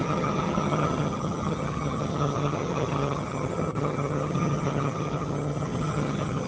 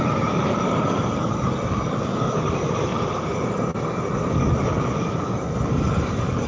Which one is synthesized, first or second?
first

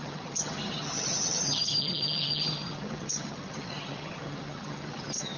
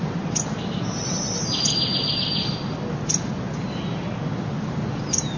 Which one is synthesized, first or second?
first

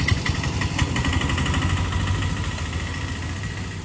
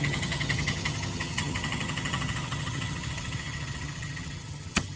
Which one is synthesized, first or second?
second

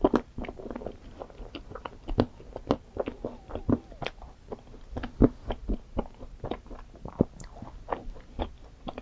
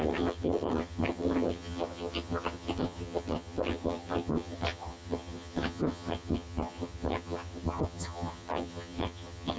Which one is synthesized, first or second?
second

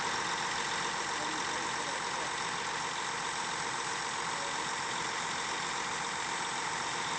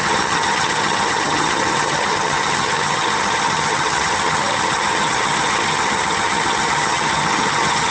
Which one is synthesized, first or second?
second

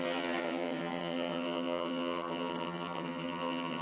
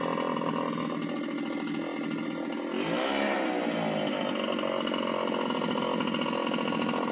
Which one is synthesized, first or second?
first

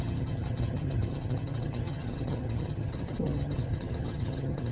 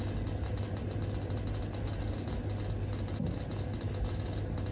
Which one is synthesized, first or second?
first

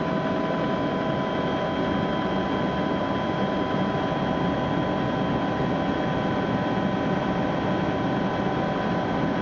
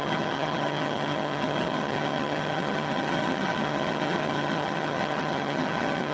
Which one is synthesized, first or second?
second